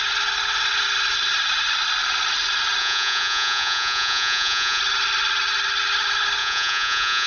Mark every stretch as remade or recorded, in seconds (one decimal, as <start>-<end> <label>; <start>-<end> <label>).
0.0-2.8 recorded; 2.8-4.8 remade; 4.8-6.4 recorded; 6.4-7.3 remade